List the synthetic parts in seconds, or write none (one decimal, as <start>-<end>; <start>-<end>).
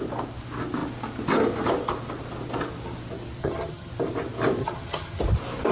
3.4-3.9; 4.6-5.2